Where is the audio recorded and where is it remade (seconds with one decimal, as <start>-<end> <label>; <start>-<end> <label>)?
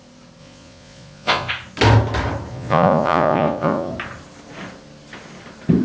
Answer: 0.0-0.4 recorded; 0.4-1.5 remade; 1.5-2.5 recorded; 2.5-3.9 remade; 3.9-5.8 recorded